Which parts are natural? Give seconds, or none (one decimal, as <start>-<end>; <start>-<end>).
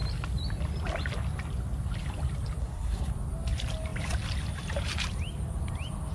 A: 0.0-2.6; 3.1-6.1